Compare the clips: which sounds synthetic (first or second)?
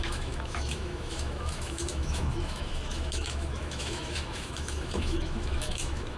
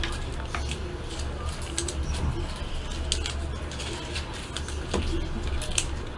first